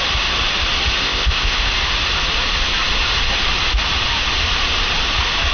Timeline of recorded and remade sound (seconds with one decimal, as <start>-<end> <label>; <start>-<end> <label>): 0.0-1.0 recorded; 1.0-1.7 remade; 1.7-5.5 recorded